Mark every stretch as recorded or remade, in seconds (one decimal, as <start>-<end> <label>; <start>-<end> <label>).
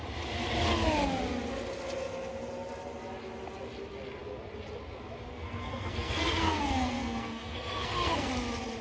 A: 0.0-5.3 recorded; 5.3-8.3 remade; 8.3-8.8 recorded